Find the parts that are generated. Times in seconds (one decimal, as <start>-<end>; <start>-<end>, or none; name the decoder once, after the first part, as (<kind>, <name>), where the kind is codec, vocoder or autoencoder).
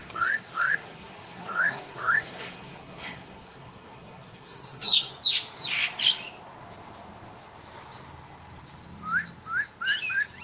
0.0-5.1 (codec, SNAC)